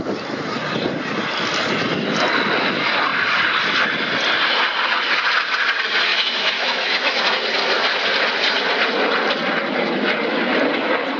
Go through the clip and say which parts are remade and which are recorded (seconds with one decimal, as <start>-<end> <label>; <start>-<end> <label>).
0.0-6.1 recorded; 6.1-7.2 remade; 7.2-11.2 recorded